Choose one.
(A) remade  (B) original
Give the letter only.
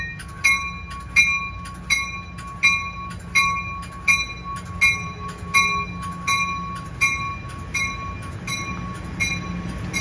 B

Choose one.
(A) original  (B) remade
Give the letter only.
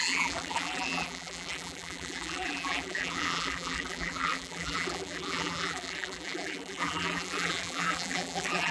B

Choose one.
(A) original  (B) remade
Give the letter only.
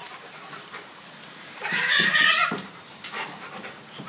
B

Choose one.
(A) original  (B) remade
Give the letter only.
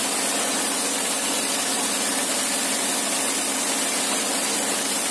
A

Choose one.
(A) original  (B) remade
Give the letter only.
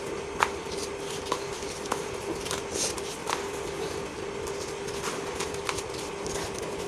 A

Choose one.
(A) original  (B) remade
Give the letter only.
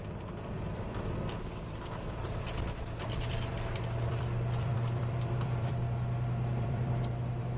B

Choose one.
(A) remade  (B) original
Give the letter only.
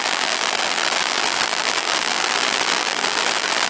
A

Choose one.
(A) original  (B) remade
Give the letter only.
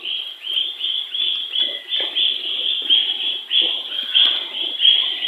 B